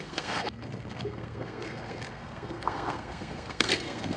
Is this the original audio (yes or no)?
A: no